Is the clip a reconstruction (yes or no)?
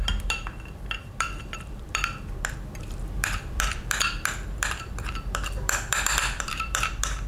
yes